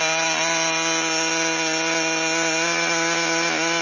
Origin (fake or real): real